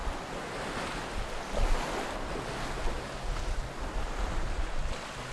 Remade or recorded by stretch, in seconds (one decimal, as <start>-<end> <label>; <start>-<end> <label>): 0.0-5.3 recorded